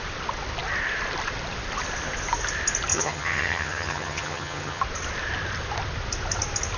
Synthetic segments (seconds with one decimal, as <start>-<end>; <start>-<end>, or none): 2.9-4.8